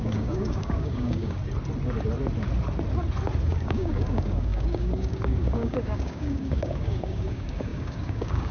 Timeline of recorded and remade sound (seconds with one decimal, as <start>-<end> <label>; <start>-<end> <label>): 0.0-1.4 remade; 1.4-3.4 recorded; 3.4-8.5 remade